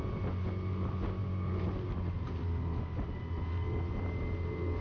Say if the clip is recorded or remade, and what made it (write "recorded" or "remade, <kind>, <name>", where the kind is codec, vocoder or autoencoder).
recorded